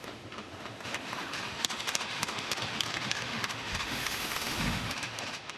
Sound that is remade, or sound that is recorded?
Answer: remade